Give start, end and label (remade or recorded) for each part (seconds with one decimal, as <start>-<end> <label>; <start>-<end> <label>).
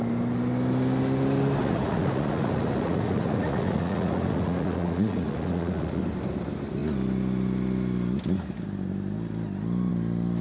0.0-1.6 recorded; 1.6-6.0 remade; 6.0-10.4 recorded